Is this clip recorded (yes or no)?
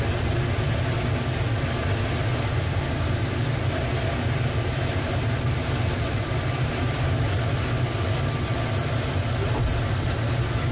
yes